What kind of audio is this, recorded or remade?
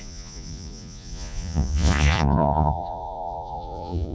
remade